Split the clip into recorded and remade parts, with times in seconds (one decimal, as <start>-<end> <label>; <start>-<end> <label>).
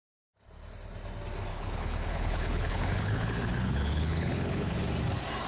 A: 0.0-1.5 recorded; 1.5-4.8 remade; 4.8-5.5 recorded